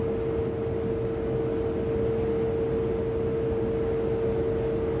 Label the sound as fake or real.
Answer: real